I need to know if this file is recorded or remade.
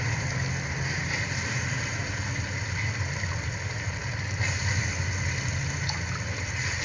recorded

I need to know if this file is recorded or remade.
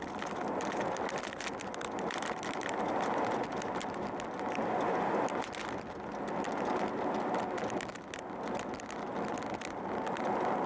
recorded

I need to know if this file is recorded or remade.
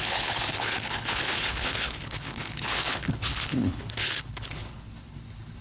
remade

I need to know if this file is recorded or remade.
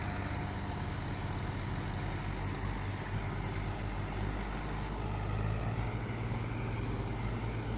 recorded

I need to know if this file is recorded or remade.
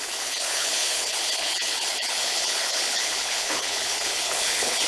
remade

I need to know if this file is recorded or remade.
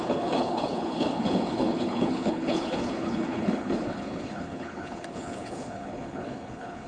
remade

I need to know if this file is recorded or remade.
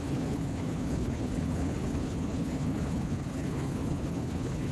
remade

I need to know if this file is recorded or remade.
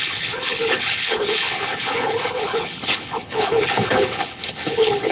remade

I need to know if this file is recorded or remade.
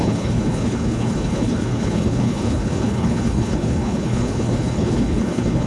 remade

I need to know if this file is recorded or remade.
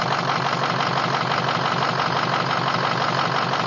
recorded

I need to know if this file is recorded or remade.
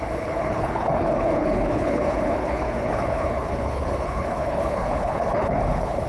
remade